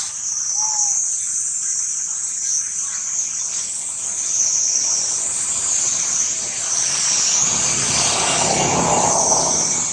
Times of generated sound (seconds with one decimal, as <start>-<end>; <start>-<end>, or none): 5.3-7.0